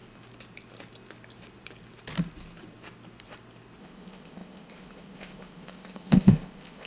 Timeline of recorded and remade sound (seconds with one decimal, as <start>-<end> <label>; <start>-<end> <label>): 0.0-3.8 recorded; 3.8-6.9 remade